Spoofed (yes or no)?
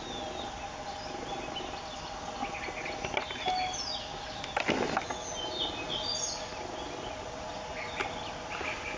no